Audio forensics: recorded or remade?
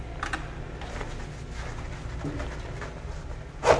recorded